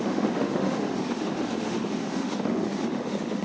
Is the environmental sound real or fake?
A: fake